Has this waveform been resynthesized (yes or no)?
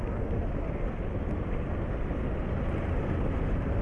no